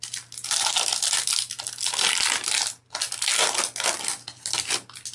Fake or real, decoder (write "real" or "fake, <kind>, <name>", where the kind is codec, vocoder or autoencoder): real